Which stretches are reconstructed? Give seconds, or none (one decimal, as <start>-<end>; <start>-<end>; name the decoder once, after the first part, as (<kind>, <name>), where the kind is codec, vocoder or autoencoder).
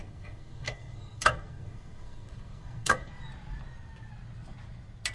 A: 0.0-3.1 (codec, SNAC)